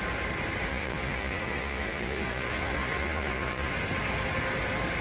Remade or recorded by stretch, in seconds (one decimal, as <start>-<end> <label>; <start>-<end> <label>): 0.0-0.7 recorded; 0.7-3.7 remade; 3.7-5.0 recorded